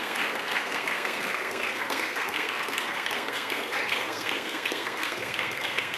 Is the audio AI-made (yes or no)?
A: yes